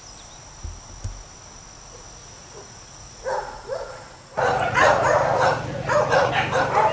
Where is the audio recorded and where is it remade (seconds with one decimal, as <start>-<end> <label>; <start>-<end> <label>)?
0.0-2.2 recorded; 2.2-6.3 remade; 6.3-6.9 recorded

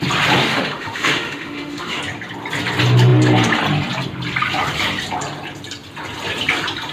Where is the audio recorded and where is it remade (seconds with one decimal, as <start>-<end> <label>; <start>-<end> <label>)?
0.0-0.4 recorded; 0.4-2.0 remade; 2.0-6.9 recorded